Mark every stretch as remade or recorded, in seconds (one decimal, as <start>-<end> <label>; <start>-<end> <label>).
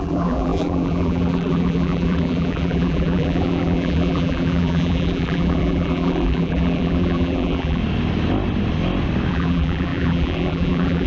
0.0-7.8 remade; 7.8-9.3 recorded; 9.3-11.1 remade